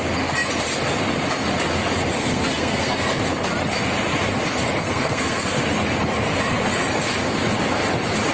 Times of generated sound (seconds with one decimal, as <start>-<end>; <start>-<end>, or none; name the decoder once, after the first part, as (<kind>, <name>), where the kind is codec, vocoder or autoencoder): 2.2-3.2 (codec, SNAC); 4.8-5.6